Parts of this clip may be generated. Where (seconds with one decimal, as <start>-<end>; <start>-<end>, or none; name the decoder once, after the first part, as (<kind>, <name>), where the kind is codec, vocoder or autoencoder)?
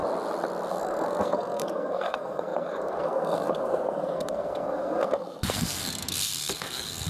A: 0.7-7.1 (codec, SNAC)